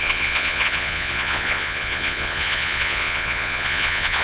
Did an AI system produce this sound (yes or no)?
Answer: yes